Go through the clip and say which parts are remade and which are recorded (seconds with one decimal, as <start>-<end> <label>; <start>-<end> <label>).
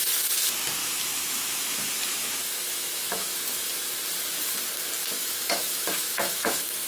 0.0-0.8 recorded; 0.8-3.7 remade; 3.7-5.0 recorded; 5.0-6.9 remade